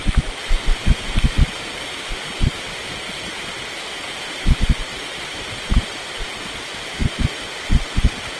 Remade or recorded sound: recorded